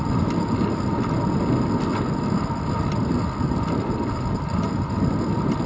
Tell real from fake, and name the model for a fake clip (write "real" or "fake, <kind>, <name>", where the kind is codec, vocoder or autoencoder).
real